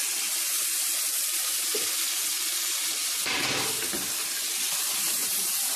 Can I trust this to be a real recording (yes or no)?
yes